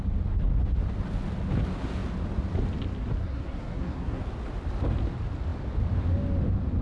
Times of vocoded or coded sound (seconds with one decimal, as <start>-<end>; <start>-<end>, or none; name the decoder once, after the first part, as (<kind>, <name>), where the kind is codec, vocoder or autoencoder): 3.2-4.2 (codec, SNAC)